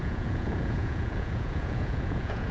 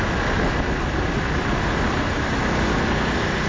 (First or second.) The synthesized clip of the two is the first